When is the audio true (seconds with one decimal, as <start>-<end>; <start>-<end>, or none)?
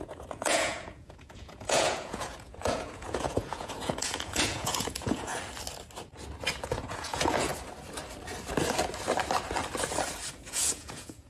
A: 5.3-6.6; 7.5-10.3